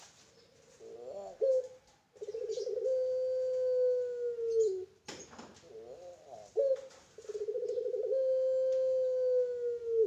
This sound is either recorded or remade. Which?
recorded